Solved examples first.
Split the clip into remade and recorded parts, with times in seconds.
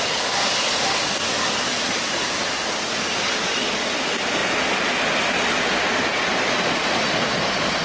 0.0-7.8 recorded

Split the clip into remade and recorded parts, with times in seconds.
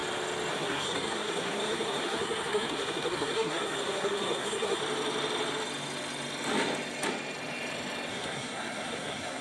0.0-0.5 recorded; 0.5-4.8 remade; 4.8-8.1 recorded; 8.1-9.4 remade